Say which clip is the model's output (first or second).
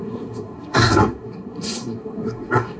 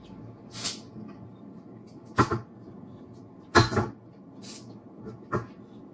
first